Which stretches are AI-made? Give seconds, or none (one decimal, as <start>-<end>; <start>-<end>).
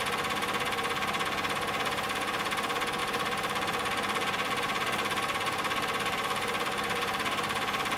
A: 3.0-8.0